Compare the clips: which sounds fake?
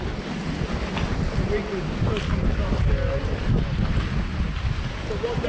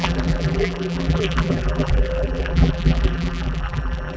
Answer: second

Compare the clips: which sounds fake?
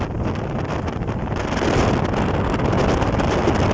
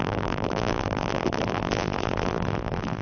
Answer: second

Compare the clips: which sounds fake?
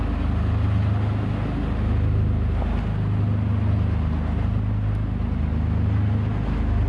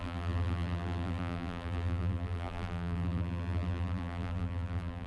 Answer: second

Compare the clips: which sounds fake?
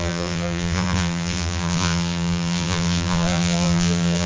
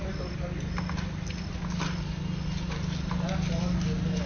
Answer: first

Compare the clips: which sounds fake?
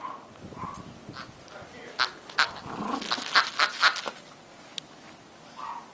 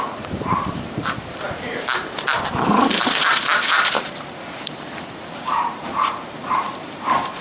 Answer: second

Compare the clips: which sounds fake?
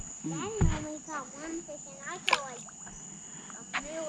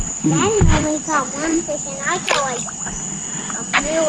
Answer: second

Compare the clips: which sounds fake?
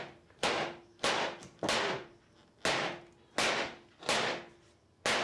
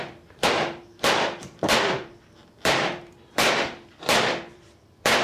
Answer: second